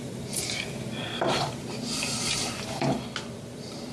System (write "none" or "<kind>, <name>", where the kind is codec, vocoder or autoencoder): vocoder, BigVGAN v2